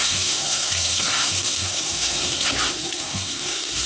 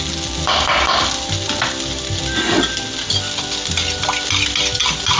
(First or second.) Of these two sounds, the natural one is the second